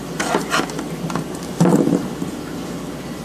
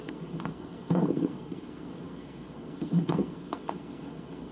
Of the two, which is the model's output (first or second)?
second